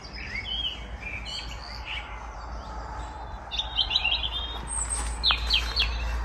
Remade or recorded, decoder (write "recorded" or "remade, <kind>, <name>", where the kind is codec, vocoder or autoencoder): recorded